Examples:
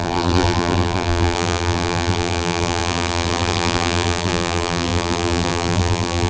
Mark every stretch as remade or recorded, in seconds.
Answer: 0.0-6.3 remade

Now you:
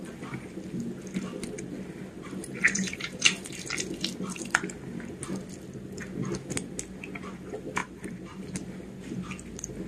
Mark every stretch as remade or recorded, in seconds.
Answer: 0.0-2.4 recorded; 2.4-3.7 remade; 3.7-7.8 recorded; 7.8-8.4 remade; 8.4-9.9 recorded